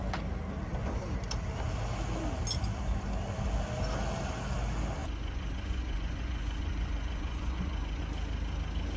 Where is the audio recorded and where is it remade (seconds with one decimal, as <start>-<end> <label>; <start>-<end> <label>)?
0.0-5.0 recorded; 5.0-8.0 remade; 8.0-9.0 recorded